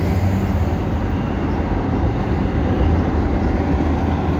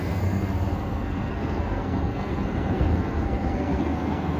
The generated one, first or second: second